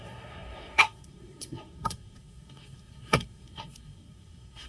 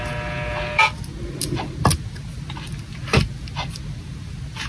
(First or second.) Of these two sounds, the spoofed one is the first